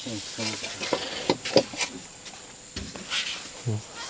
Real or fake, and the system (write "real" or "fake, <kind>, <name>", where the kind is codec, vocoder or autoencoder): real